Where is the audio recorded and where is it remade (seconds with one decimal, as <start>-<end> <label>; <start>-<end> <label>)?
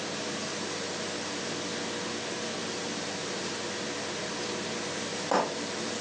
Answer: 0.0-0.4 recorded; 0.4-1.5 remade; 1.5-2.6 recorded; 2.6-3.5 remade; 3.5-5.1 recorded; 5.1-6.0 remade